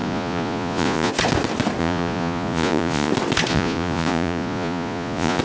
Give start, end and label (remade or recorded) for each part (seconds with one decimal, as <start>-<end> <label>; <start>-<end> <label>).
0.0-1.1 remade; 1.1-1.8 recorded; 1.8-3.1 remade; 3.1-3.5 recorded; 3.5-5.4 remade